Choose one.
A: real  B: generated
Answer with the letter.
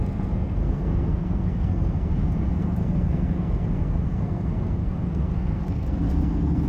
B